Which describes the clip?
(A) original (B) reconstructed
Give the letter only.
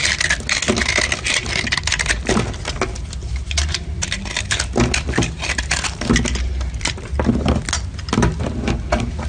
A